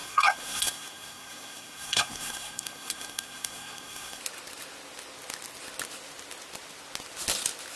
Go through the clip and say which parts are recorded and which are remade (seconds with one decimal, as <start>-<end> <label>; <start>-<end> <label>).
0.0-4.2 remade; 4.2-7.8 recorded